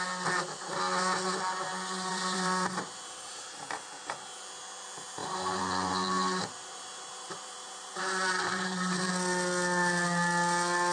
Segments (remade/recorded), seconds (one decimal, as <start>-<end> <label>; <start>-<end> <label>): 0.0-2.1 recorded; 2.1-3.6 remade; 3.6-5.2 recorded; 5.2-9.1 remade; 9.1-10.9 recorded